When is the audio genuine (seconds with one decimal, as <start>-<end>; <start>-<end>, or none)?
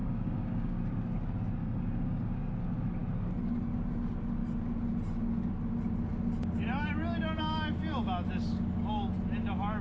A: 0.8-1.6; 2.5-9.8